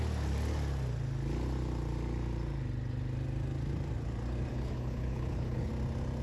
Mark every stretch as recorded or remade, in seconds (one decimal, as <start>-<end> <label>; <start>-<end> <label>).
0.0-4.5 recorded; 4.5-5.7 remade; 5.7-6.2 recorded